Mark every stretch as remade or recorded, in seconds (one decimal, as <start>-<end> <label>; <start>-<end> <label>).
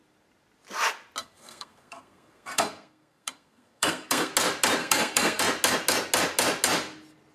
0.0-1.2 recorded; 1.2-4.3 remade; 4.3-4.8 recorded; 4.8-5.4 remade; 5.4-7.3 recorded